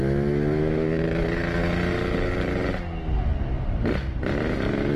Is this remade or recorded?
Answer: recorded